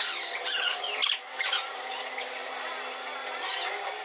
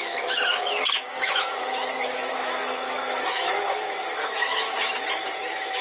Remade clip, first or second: second